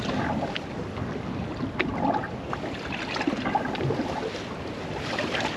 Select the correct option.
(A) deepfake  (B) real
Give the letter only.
B